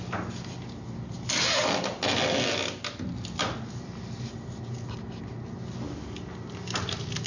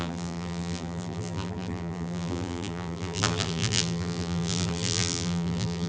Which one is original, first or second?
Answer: first